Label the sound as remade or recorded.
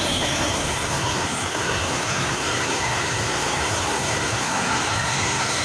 remade